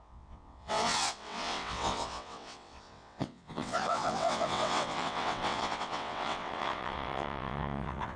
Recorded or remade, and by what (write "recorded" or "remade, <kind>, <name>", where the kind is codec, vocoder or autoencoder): remade, vocoder, WaveNeXt